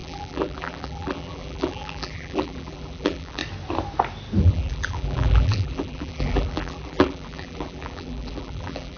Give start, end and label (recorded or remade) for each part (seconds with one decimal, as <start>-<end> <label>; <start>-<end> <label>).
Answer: 0.0-3.4 remade; 3.4-4.4 recorded; 4.4-9.0 remade